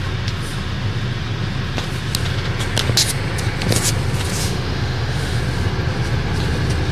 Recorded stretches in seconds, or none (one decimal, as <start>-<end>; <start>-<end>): 0.0-4.4; 5.4-6.9